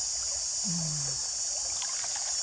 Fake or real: real